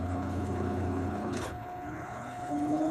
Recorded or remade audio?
remade